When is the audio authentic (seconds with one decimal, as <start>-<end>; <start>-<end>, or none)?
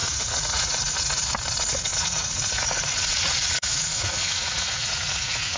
1.3-1.9